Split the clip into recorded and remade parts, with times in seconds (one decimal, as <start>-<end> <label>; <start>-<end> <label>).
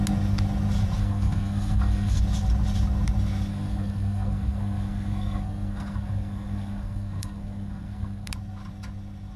0.0-1.0 recorded; 1.0-2.2 remade; 2.2-3.5 recorded; 3.5-8.3 remade; 8.3-9.4 recorded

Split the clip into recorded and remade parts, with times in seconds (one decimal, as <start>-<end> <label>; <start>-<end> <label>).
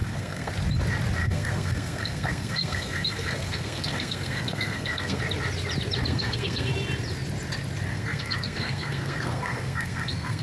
0.0-0.5 remade; 0.5-1.2 recorded; 1.2-5.2 remade; 5.2-6.1 recorded; 6.1-6.7 remade; 6.7-7.9 recorded; 7.9-10.4 remade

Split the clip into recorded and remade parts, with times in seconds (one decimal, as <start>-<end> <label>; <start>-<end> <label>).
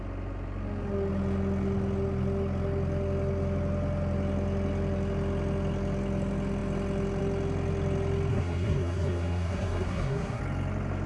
0.0-8.3 recorded; 8.3-10.4 remade; 10.4-11.1 recorded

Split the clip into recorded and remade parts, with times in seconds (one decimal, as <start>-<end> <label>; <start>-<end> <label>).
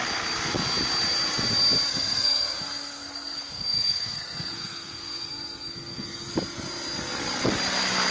0.0-1.9 recorded; 1.9-6.3 remade; 6.3-8.1 recorded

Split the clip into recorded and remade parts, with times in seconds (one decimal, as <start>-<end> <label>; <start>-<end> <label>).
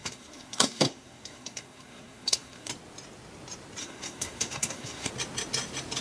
0.0-2.7 remade; 2.7-3.8 recorded; 3.8-5.1 remade; 5.1-6.0 recorded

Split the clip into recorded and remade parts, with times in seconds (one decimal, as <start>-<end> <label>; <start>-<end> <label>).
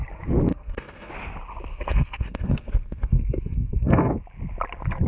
0.0-0.5 recorded; 0.5-1.1 remade; 1.1-1.7 recorded; 1.7-4.1 remade; 4.1-5.1 recorded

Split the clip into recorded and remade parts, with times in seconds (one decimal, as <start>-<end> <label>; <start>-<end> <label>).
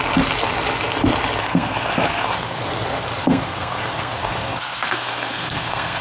0.0-1.4 recorded; 1.4-2.6 remade; 2.6-3.2 recorded; 3.2-6.0 remade